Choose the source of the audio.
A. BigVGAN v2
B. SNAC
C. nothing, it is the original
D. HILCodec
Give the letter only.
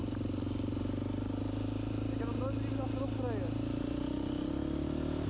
C